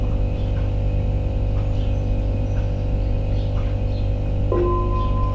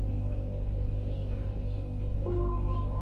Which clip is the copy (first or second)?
second